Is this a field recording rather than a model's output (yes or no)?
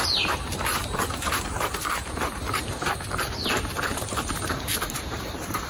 no